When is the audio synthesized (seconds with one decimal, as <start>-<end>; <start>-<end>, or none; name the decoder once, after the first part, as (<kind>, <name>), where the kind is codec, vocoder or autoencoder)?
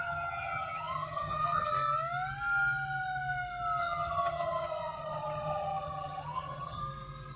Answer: 0.0-1.7 (vocoder, HiFi-GAN); 3.8-6.8